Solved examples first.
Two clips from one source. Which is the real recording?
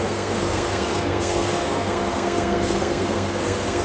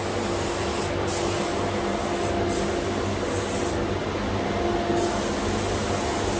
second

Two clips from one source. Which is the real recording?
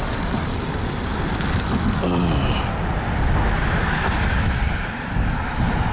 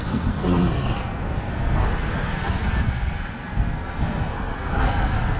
first